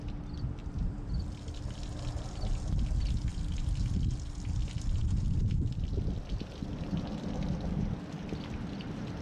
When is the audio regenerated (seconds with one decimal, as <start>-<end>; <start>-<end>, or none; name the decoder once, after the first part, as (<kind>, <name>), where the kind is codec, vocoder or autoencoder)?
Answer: 0.6-1.1 (vocoder, BigVGAN v2); 3.3-5.9